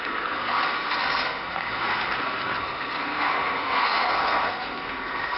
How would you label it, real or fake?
fake